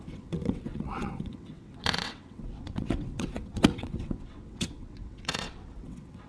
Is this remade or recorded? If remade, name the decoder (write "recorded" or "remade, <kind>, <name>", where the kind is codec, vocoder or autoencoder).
remade, vocoder, WaveNeXt